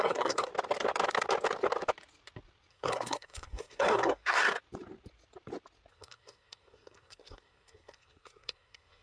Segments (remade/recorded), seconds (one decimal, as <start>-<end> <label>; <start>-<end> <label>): 0.0-0.5 remade; 0.5-2.7 recorded; 2.7-4.4 remade; 4.4-5.9 recorded; 5.9-9.0 remade